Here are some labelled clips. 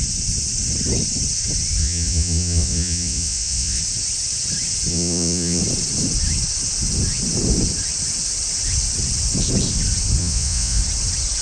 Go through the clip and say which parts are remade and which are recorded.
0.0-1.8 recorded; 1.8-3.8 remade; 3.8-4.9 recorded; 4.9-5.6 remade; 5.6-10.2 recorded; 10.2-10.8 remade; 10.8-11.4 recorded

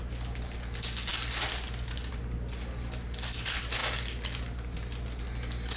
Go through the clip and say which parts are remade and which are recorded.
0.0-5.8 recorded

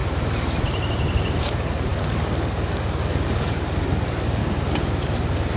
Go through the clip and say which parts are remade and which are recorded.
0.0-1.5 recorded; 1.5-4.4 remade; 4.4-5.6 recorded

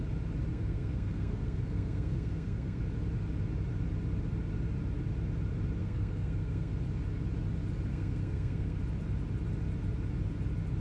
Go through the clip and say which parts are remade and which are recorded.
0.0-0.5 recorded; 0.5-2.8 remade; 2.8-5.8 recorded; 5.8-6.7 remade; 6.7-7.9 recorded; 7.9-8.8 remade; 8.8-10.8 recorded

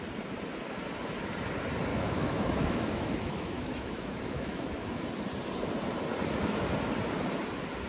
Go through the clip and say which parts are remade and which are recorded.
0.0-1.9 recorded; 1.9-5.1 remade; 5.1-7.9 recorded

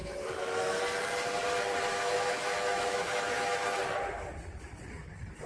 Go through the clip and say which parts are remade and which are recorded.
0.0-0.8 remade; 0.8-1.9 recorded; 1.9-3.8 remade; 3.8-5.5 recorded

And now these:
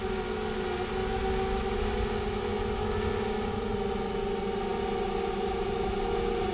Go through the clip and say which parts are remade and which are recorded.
0.0-6.5 recorded